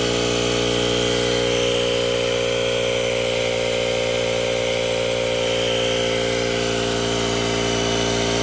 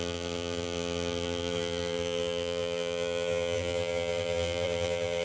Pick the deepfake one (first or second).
second